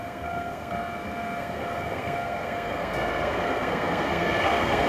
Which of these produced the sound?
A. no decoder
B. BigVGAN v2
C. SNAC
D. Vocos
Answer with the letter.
C